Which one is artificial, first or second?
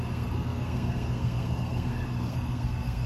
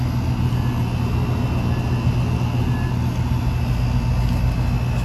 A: first